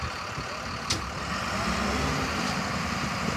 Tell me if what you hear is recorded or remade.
recorded